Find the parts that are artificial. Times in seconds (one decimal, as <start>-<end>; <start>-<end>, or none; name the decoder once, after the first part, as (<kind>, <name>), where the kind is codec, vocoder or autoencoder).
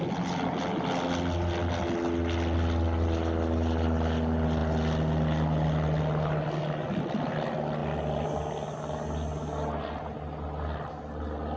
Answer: none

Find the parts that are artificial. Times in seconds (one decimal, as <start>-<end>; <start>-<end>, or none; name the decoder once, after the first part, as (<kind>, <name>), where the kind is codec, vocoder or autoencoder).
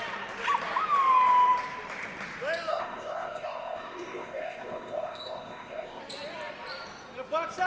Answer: 2.7-6.0 (codec, ZipCodec)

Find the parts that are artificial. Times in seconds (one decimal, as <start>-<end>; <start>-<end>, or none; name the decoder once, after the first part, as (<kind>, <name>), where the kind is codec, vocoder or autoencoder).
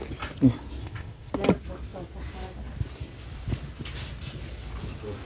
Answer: 0.8-1.3 (codec, ZipCodec)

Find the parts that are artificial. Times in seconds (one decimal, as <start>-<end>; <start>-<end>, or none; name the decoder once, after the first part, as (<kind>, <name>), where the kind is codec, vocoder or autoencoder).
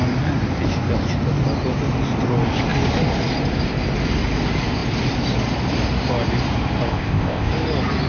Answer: 6.9-7.5 (codec, ZipCodec)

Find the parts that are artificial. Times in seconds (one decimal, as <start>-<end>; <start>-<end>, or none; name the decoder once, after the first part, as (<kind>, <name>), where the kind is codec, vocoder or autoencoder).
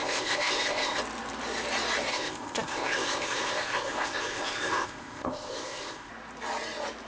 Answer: 0.0-1.0 (codec, ZipCodec); 2.1-6.1